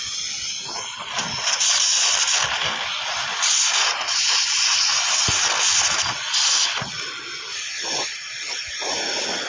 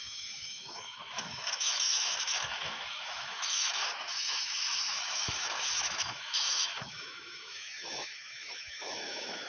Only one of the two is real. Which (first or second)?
first